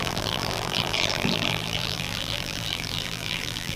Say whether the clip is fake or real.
fake